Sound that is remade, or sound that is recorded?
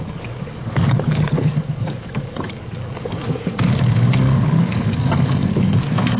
remade